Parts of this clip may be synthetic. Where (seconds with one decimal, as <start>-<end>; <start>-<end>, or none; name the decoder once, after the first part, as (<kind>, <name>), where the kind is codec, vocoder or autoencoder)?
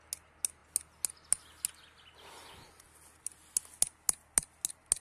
none